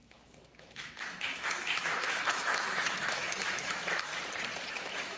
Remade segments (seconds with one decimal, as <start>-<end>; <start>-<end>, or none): 0.0-4.1; 4.7-5.2